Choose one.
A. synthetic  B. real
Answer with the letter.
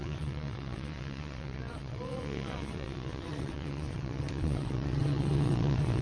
A